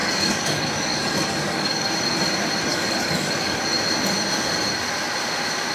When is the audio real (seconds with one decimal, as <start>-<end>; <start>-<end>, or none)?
1.9-2.7; 3.6-5.7